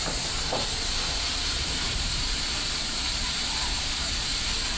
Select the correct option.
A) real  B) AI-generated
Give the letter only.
B